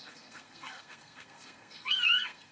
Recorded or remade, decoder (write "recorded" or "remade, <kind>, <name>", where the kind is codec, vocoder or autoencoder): remade, codec, SNAC